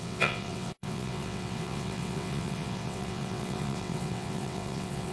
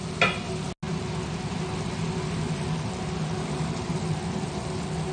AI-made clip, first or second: first